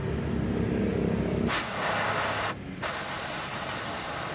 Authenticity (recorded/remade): recorded